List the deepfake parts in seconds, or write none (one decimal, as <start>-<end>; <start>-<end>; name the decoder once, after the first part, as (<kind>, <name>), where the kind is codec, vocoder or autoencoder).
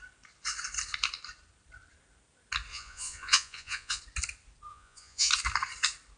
2.7-4.0 (vocoder, Vocos); 4.7-5.3